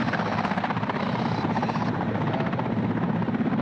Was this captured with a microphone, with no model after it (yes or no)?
yes